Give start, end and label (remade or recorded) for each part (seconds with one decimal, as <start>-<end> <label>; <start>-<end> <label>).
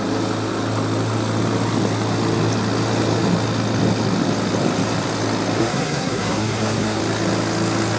0.0-5.6 recorded; 5.6-7.0 remade; 7.0-8.0 recorded